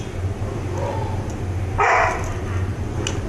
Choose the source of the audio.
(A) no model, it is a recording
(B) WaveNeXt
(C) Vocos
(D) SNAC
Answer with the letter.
A